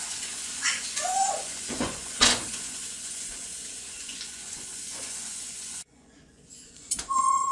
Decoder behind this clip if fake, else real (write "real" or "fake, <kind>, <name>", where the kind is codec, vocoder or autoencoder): fake, vocoder, Vocos